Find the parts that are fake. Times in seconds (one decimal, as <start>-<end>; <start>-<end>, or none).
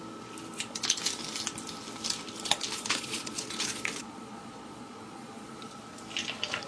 2.7-5.8